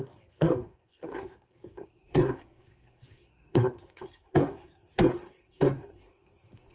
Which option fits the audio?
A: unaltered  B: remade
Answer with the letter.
B